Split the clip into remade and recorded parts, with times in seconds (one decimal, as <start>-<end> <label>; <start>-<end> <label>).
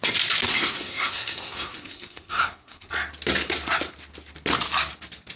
0.0-0.5 recorded; 0.5-2.9 remade; 2.9-5.4 recorded